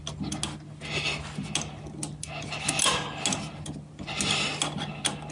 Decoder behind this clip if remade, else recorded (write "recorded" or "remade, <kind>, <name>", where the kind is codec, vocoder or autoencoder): recorded